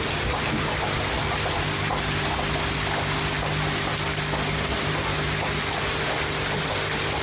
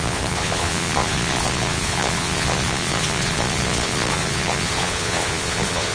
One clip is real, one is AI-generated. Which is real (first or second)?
first